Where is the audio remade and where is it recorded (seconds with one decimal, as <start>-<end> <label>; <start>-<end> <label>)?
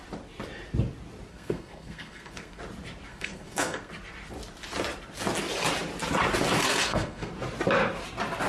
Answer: 0.0-1.3 recorded; 1.3-2.6 remade; 2.6-3.1 recorded; 3.1-3.9 remade; 3.9-6.6 recorded; 6.6-7.3 remade; 7.3-8.5 recorded